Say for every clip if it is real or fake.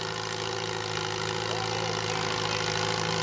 real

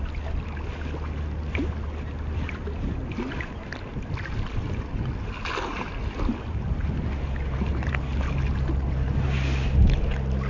real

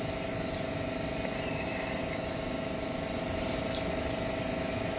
real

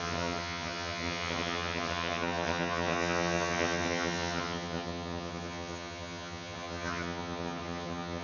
fake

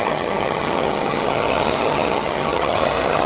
fake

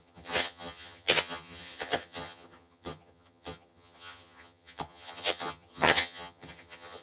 fake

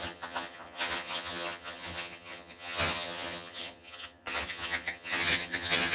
fake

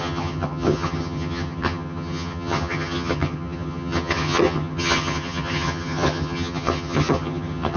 fake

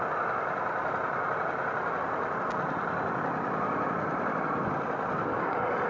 real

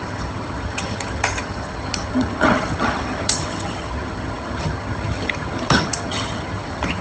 fake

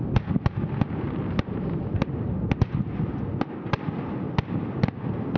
real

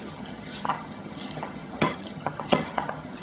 fake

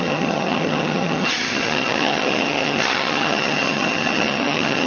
fake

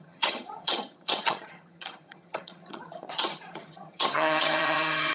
fake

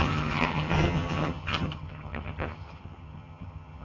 fake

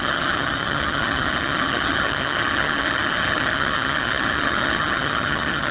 fake